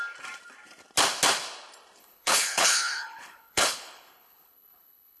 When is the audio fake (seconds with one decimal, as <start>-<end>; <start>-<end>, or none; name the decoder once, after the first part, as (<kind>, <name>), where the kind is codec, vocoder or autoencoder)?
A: 2.0-5.2 (codec, HILCodec)